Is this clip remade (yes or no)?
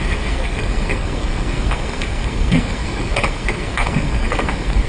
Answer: yes